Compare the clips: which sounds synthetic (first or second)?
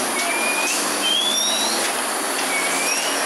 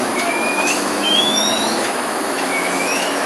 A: second